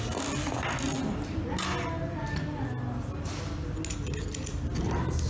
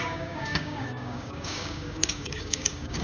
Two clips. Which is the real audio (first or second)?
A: first